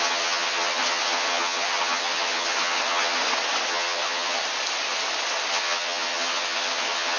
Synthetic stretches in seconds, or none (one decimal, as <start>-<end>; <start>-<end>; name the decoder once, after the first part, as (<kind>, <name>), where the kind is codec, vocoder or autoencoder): 0.0-3.2 (vocoder, HiFi-GAN); 3.7-4.4; 5.5-7.2